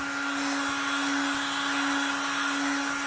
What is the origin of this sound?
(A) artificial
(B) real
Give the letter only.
B